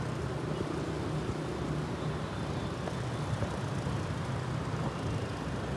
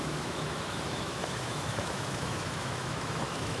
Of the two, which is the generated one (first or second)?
second